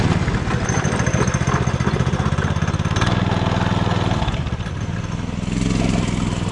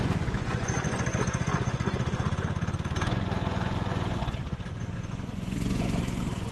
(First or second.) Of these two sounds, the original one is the first